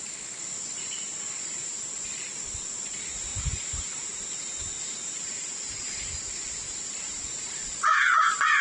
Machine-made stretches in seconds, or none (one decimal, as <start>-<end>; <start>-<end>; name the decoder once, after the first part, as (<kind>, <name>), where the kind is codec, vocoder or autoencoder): 3.3-8.6 (vocoder, BigVGAN v2)